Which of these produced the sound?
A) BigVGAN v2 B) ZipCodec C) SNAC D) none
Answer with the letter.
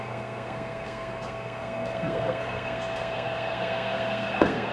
C